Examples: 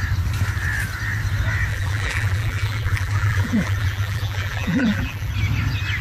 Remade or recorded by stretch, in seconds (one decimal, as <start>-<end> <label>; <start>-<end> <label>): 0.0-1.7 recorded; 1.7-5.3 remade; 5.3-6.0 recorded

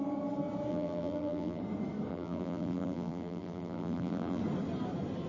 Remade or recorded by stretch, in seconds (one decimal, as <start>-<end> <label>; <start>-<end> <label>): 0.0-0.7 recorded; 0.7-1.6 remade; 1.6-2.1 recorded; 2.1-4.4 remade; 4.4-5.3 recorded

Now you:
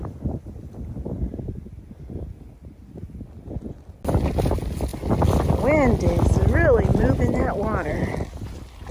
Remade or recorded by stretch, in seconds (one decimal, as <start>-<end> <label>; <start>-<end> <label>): 0.0-6.9 recorded; 6.9-7.4 remade; 7.4-8.9 recorded